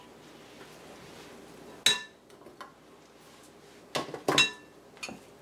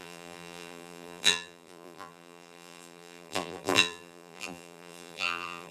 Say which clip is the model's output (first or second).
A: second